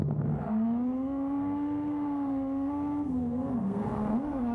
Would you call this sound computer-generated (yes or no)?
yes